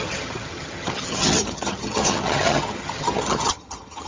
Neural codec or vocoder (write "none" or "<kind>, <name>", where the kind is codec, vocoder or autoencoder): vocoder, HiFi-GAN